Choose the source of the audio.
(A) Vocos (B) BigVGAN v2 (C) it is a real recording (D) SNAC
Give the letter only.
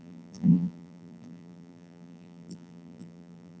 B